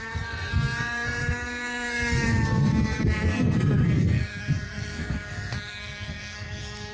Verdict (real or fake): fake